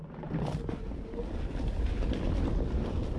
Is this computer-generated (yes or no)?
no